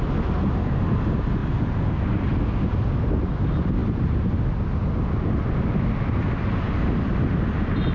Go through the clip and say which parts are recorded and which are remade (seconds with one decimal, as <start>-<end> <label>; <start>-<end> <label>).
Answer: 0.0-7.9 recorded